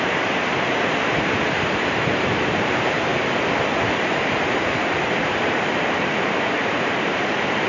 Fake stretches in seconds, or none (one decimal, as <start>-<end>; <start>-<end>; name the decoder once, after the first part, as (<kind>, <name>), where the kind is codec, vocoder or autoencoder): 0.0-3.1 (vocoder, BigVGAN v2); 3.8-7.7